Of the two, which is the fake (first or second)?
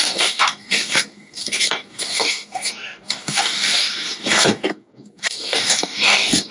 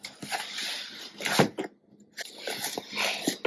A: first